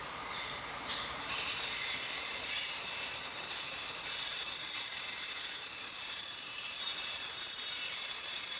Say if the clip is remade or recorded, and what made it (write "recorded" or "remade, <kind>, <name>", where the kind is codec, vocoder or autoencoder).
remade, vocoder, BigVGAN v2